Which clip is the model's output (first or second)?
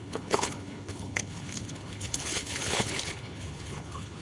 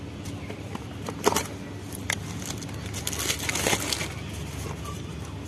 first